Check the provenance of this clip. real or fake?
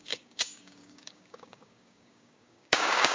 fake